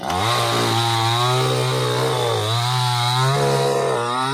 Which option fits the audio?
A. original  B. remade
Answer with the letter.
A